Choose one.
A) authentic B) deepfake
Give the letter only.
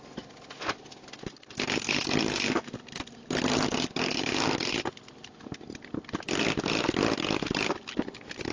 A